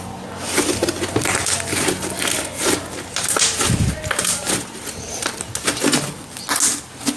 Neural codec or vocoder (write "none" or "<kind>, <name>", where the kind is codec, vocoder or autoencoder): none